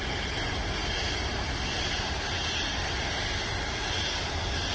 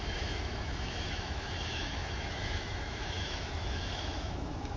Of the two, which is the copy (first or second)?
second